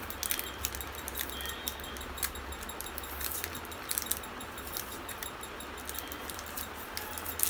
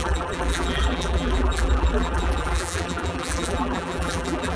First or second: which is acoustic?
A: first